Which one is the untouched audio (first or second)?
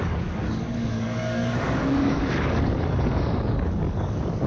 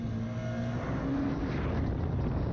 second